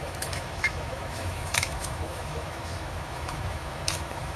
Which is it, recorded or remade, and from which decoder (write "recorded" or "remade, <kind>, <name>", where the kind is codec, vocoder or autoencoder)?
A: remade, autoencoder, DAC-VAE